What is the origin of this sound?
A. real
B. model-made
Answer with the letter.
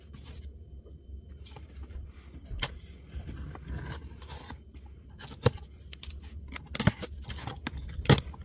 A